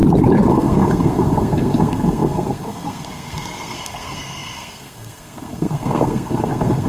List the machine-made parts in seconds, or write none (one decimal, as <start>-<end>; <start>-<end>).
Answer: 0.5-6.9

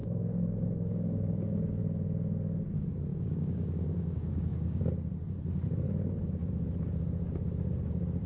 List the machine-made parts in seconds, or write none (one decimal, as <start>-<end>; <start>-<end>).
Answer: 0.0-1.8; 3.1-4.8

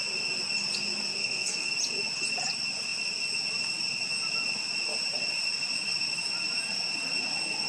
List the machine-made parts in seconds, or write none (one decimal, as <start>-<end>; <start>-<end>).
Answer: 1.2-1.7